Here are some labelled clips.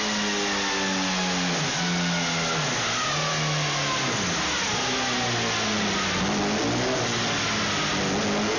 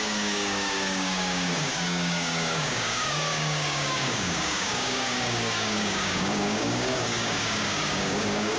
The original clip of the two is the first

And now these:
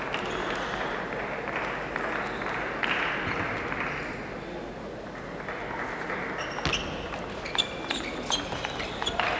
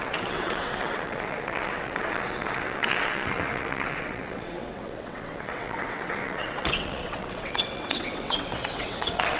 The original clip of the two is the first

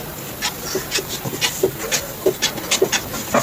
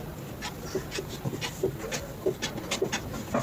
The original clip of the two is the first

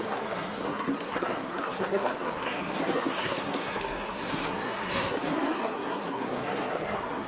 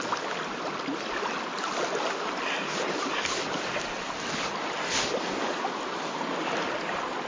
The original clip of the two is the second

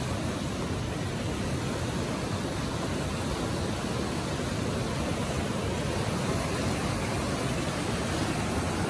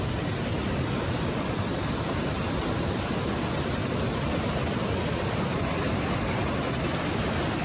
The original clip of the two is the first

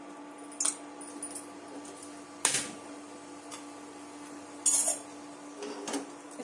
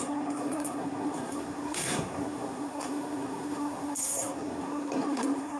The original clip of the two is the first